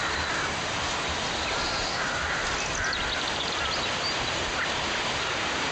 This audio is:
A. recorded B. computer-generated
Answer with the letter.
A